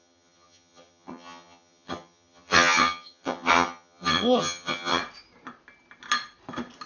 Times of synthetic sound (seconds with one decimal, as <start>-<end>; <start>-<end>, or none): 0.0-5.0